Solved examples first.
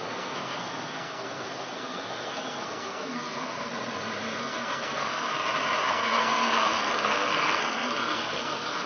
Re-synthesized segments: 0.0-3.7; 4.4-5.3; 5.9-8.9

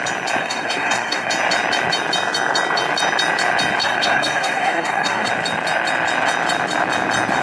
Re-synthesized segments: 0.4-1.3; 3.8-5.3

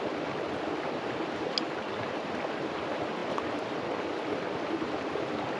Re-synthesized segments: none